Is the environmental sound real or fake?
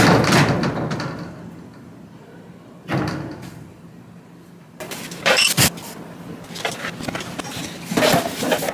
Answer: real